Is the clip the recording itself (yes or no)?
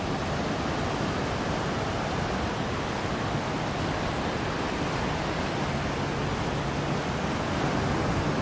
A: yes